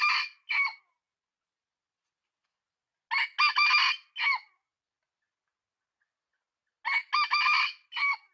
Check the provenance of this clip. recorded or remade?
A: recorded